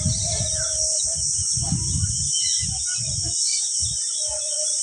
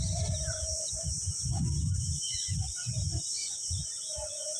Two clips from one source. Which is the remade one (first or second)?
second